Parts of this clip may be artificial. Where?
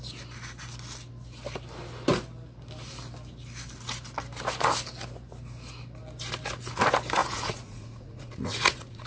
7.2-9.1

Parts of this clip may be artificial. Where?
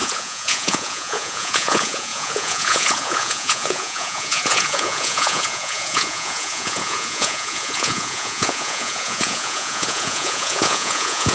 0.0-11.3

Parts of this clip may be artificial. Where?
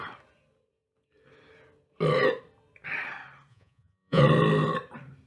3.5-4.2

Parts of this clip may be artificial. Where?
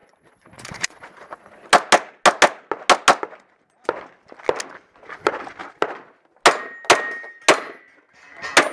0.0-1.7